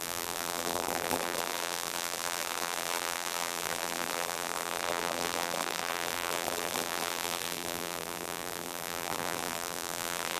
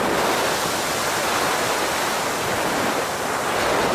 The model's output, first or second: first